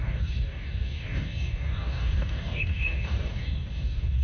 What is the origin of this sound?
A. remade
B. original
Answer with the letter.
A